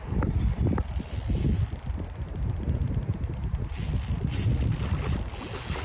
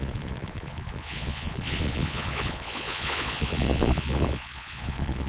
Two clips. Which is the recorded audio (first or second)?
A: first